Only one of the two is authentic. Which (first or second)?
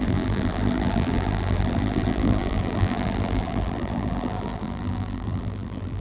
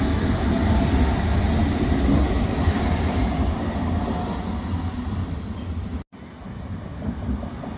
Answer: second